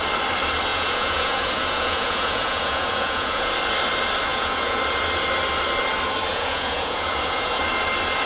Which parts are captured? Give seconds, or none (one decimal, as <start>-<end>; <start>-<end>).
0.0-0.7; 3.5-4.3; 4.8-6.3; 7.6-8.3